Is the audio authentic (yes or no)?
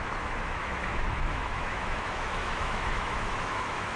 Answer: no